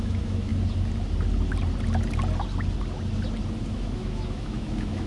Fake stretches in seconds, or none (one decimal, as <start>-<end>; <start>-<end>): 0.0-0.5; 3.6-5.1